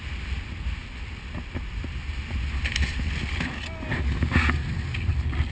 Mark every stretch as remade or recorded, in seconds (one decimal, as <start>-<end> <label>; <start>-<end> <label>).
0.0-5.5 recorded

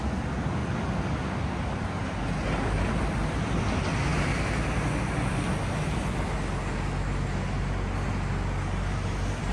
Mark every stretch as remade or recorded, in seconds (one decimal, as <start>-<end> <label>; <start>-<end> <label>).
0.0-9.5 recorded

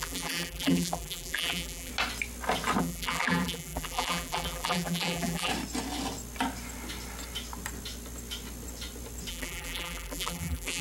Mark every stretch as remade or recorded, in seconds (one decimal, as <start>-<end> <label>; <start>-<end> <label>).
0.0-1.9 remade; 1.9-2.8 recorded; 2.8-5.5 remade; 5.5-9.3 recorded; 9.3-10.8 remade

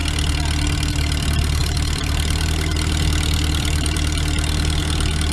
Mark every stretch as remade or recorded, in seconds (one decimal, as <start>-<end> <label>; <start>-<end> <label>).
0.0-1.6 recorded; 1.6-4.8 remade; 4.8-5.3 recorded